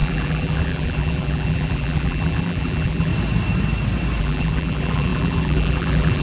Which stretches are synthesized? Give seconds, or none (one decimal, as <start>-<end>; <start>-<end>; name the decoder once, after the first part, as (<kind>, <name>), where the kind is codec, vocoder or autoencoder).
0.0-3.1 (vocoder, BigVGAN v2); 4.2-6.2